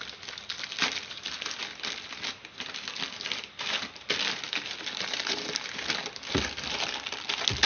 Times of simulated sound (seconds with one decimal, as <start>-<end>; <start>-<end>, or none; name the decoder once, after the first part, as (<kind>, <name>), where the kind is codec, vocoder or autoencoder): none